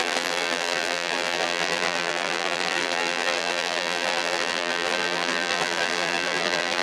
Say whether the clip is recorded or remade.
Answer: remade